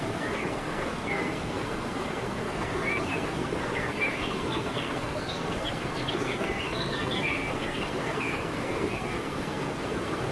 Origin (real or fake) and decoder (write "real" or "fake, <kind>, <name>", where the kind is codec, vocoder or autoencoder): fake, codec, SNAC